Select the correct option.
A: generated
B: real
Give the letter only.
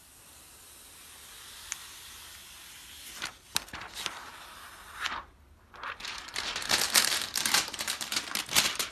B